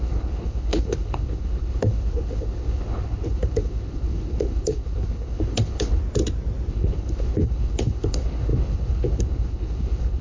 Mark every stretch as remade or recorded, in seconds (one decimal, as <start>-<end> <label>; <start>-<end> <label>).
0.0-6.0 remade; 6.0-6.7 recorded; 6.7-10.2 remade